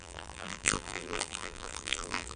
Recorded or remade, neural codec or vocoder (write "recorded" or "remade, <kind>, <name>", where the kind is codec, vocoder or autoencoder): remade, vocoder, BigVGAN v2